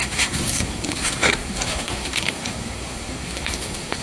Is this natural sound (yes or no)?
no